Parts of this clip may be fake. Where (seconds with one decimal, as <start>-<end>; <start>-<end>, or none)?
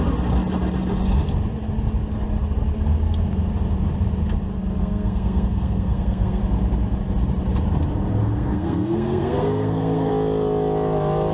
4.8-6.4; 8.2-10.1